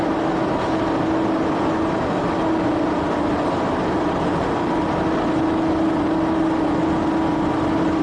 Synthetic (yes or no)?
no